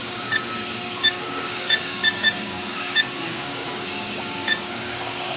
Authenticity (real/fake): fake